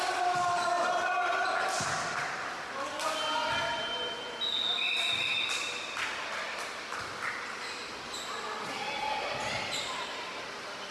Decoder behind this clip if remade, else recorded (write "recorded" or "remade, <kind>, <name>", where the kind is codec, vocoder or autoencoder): recorded